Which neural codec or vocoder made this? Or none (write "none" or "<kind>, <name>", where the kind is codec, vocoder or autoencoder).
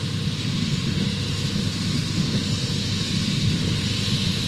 none